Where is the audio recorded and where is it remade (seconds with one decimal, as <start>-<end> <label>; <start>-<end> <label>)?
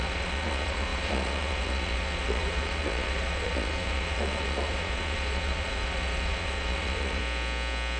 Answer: 0.0-7.2 remade; 7.2-8.0 recorded